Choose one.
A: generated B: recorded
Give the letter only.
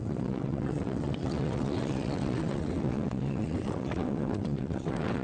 A